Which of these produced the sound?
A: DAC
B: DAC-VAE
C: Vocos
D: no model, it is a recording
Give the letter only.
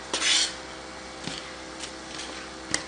D